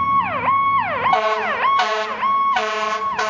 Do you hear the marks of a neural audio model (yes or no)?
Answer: no